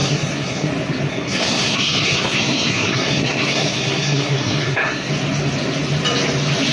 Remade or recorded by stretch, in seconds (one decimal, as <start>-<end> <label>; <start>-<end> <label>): 0.0-0.7 remade; 0.7-1.1 recorded; 1.1-5.1 remade; 5.1-6.7 recorded